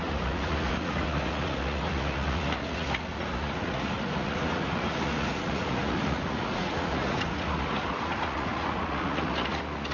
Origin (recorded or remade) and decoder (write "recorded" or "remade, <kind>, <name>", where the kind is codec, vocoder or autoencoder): remade, vocoder, Vocos